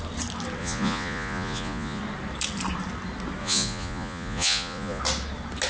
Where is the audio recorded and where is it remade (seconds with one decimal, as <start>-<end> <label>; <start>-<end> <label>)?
0.0-0.6 recorded; 0.6-2.0 remade; 2.0-3.4 recorded; 3.4-5.0 remade; 5.0-5.7 recorded